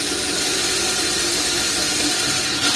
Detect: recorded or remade recorded